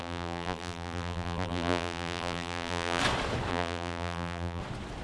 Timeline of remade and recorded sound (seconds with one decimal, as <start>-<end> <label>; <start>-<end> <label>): 0.0-3.0 remade; 3.0-3.5 recorded; 3.5-4.6 remade; 4.6-5.0 recorded